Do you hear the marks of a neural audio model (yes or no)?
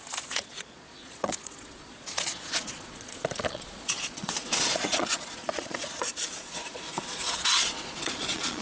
yes